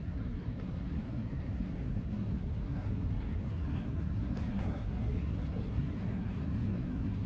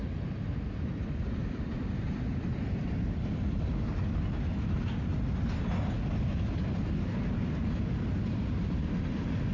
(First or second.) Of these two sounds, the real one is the second